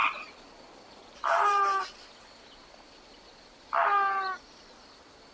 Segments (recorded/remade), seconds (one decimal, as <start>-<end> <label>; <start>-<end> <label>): 0.0-1.8 remade; 1.8-5.3 recorded